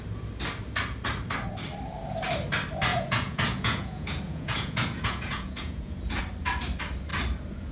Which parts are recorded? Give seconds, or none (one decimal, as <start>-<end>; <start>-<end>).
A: 0.0-2.9; 6.2-7.7